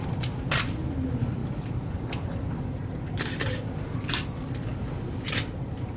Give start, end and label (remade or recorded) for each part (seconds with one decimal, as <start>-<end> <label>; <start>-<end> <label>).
0.0-6.0 recorded